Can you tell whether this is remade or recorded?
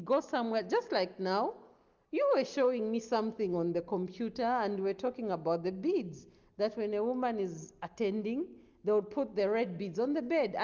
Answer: recorded